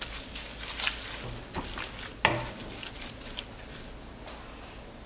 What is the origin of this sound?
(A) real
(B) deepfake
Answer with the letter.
A